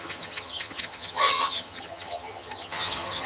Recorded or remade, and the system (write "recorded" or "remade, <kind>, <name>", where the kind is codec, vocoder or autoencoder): remade, vocoder, HiFi-GAN